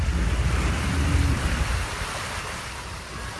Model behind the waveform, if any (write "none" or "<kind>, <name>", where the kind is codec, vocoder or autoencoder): none